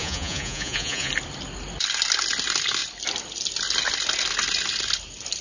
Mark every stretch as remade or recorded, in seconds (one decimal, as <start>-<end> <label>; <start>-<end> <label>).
0.0-1.1 remade; 1.1-5.4 recorded